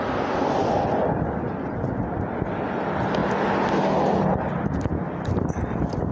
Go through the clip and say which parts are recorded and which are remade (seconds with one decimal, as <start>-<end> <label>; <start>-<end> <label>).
0.0-6.1 recorded